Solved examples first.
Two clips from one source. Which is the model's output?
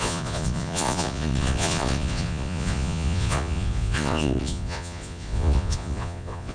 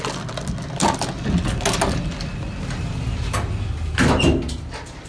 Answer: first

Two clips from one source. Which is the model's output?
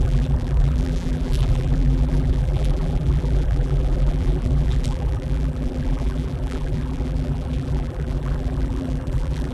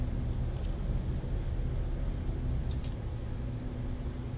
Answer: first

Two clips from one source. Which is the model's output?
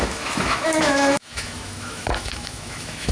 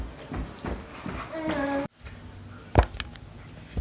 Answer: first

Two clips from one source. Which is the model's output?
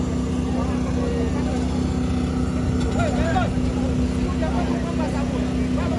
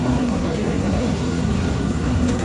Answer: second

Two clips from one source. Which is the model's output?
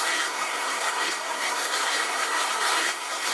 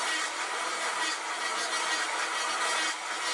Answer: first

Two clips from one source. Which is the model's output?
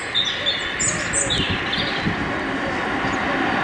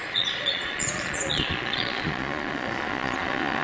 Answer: second